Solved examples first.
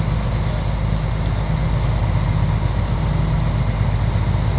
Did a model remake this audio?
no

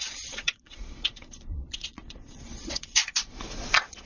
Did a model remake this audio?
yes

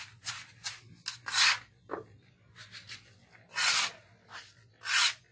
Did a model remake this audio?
no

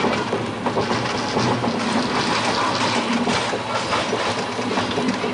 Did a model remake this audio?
no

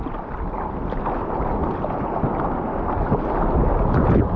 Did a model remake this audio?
no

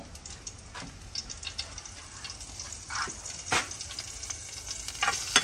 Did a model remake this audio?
no